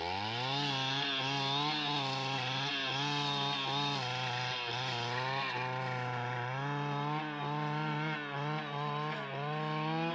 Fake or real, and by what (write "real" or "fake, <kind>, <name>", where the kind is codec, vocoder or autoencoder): real